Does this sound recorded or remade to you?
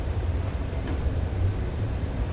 remade